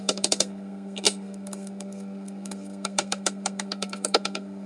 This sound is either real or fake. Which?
fake